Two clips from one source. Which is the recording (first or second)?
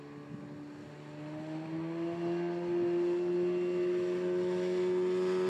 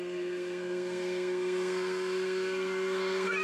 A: first